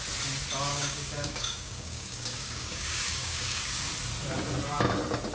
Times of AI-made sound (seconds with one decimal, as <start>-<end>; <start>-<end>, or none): 0.7-3.9